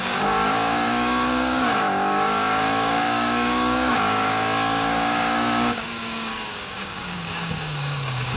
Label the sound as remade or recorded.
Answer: remade